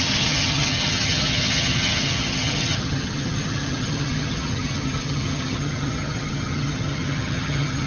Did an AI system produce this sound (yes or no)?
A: yes